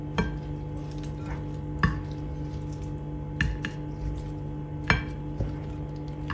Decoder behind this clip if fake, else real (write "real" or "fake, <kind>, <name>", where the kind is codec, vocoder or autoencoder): real